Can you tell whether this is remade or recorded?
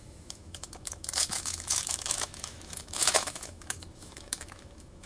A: remade